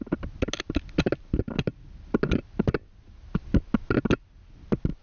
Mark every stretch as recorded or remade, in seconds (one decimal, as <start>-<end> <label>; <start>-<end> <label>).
0.0-5.0 recorded